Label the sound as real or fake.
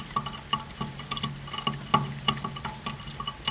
real